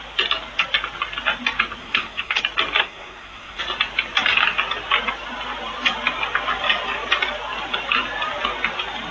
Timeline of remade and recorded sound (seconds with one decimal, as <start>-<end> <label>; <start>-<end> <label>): 0.0-1.8 recorded; 1.8-2.4 remade; 2.4-2.8 recorded; 2.8-3.6 remade; 3.6-9.1 recorded